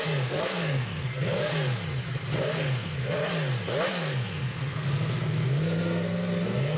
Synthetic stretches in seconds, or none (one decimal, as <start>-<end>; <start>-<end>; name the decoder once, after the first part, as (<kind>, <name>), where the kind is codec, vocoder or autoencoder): 0.0-1.5 (codec, SNAC); 2.4-3.3; 3.9-6.8